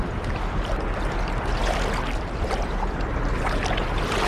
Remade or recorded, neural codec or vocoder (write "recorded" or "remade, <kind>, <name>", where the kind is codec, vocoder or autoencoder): recorded